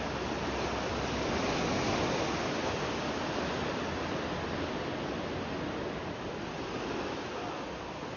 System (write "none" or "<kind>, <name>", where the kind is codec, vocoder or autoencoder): none